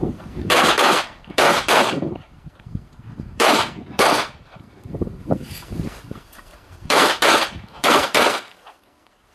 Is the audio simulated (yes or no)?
yes